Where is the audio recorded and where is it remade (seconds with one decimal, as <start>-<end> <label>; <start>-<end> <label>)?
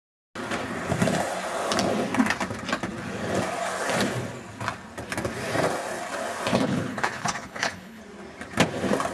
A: 0.0-6.5 recorded; 6.5-8.0 remade; 8.0-9.1 recorded